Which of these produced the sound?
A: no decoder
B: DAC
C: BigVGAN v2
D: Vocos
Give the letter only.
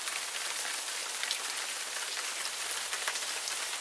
C